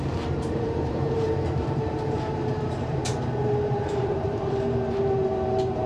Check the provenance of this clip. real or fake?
fake